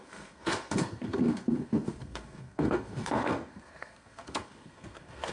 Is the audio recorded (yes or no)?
no